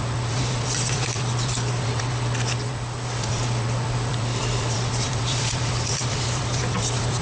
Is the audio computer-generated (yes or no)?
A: yes